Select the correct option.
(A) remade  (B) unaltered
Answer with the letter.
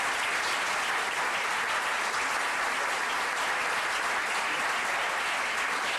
B